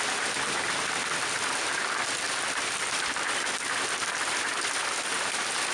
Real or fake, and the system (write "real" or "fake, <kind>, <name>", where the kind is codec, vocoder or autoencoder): real